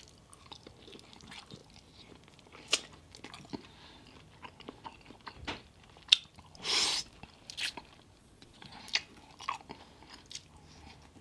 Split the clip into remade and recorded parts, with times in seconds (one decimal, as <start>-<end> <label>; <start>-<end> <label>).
0.0-8.2 recorded; 8.2-8.8 remade; 8.8-11.2 recorded